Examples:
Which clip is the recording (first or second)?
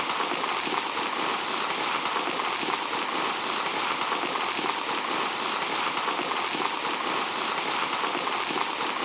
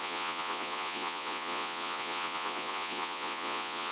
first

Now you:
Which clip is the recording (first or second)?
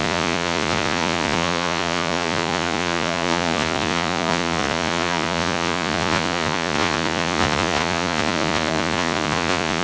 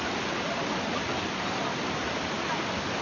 second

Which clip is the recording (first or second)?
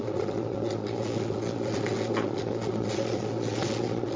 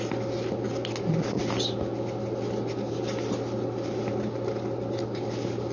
second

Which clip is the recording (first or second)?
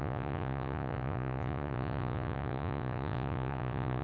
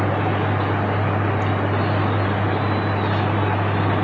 second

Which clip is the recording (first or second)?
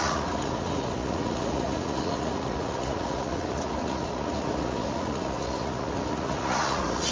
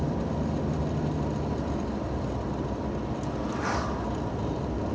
second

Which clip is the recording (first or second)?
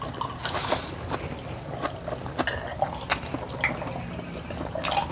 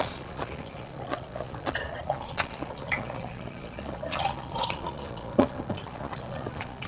first